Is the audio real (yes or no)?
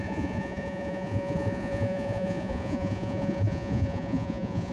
no